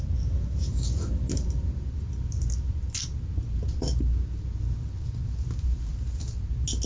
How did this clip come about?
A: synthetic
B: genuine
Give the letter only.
B